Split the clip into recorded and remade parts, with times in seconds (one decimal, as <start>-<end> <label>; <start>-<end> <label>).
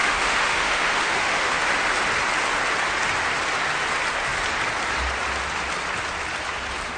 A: 0.0-1.6 remade; 1.6-7.0 recorded